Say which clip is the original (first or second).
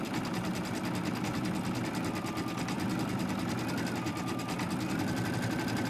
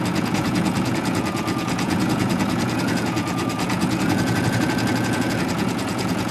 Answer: first